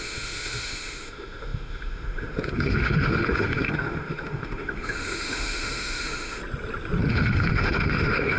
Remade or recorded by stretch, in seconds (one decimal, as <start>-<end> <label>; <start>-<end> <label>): 0.0-6.4 remade; 6.4-7.1 recorded; 7.1-8.4 remade